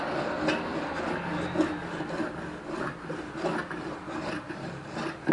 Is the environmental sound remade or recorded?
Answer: recorded